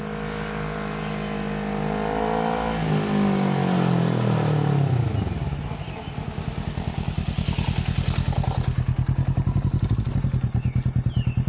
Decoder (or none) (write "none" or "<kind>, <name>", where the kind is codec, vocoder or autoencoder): none